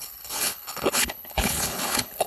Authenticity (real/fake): fake